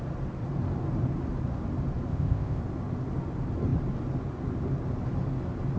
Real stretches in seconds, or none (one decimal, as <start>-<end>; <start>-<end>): 0.0-2.1; 2.6-5.8